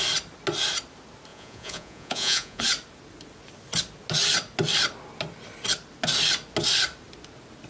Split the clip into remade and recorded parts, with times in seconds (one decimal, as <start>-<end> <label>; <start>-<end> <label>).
0.0-1.3 recorded; 1.3-2.6 remade; 2.6-7.7 recorded

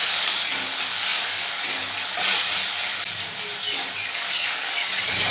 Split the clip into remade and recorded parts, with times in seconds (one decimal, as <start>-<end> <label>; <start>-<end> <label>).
0.0-5.3 remade

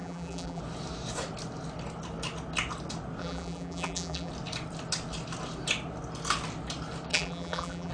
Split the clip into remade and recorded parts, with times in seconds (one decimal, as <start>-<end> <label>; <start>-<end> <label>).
0.0-0.6 remade; 0.6-3.2 recorded; 3.2-4.3 remade; 4.3-7.1 recorded; 7.1-7.9 remade

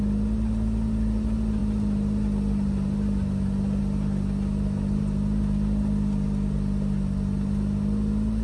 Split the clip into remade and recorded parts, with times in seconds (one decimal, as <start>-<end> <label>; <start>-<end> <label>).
0.0-8.4 recorded